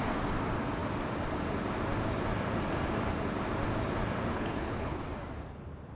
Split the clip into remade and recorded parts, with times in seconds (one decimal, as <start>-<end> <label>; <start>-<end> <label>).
0.0-4.3 recorded; 4.3-5.0 remade; 5.0-6.0 recorded